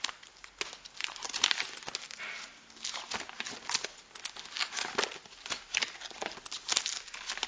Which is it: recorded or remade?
recorded